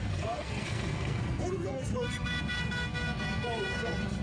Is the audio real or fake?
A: fake